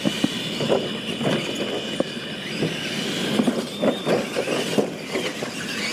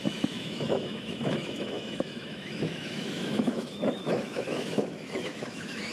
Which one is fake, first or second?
second